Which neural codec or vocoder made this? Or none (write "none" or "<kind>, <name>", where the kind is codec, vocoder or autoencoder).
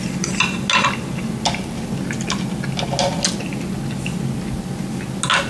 none